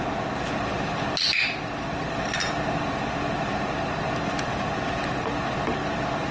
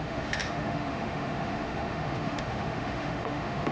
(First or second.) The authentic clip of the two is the first